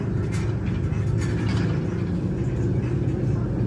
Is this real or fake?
real